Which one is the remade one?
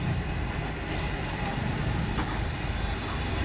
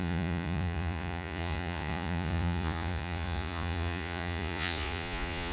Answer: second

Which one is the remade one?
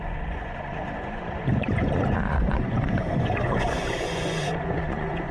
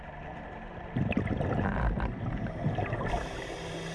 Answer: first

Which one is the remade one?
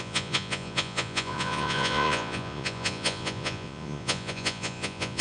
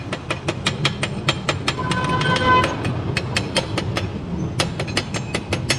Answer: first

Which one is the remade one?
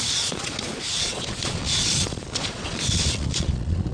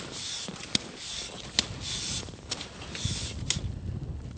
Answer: first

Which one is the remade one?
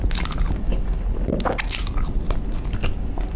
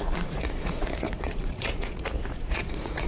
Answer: second